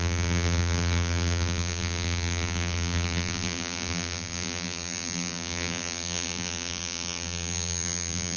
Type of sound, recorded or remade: remade